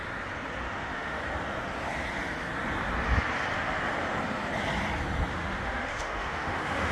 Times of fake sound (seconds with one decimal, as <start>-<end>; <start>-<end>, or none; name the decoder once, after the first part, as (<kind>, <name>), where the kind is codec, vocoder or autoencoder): 0.7-1.2 (autoencoder, DAC-VAE); 5.3-6.9